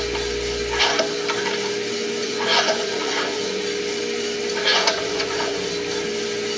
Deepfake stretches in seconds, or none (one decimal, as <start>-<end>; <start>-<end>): 2.2-3.6; 4.7-5.7